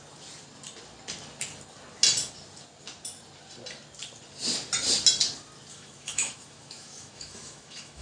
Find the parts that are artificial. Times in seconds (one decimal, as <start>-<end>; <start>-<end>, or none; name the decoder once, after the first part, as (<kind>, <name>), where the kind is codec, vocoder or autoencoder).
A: 5.7-8.0 (autoencoder, DAC-VAE)